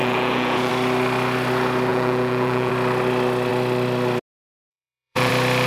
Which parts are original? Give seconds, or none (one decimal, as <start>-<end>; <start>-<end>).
0.7-1.9; 2.7-4.7; 5.3-5.7